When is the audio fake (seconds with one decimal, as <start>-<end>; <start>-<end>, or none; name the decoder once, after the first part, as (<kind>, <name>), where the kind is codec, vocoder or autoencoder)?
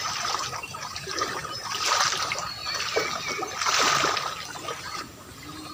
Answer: 0.0-2.6 (vocoder, BigVGAN v2); 4.8-5.7